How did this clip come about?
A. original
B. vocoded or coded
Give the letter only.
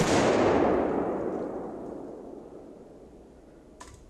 A